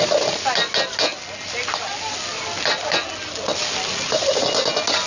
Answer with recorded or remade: recorded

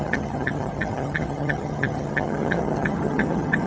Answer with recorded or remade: remade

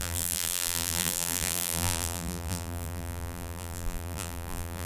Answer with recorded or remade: remade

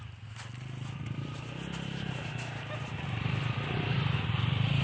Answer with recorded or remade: recorded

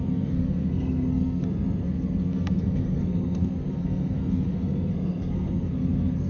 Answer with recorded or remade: remade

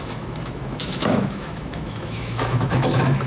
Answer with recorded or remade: remade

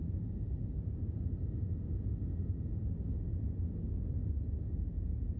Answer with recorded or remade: recorded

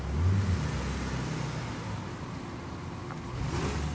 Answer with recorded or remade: recorded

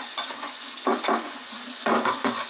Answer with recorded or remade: remade